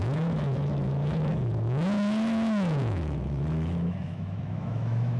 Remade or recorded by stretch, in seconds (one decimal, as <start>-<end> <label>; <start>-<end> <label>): 0.0-5.2 remade